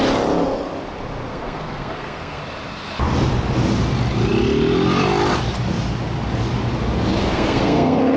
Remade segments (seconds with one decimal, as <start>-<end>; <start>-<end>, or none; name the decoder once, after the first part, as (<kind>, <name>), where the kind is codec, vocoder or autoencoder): 1.3-2.4 (codec, SNAC); 7.2-8.2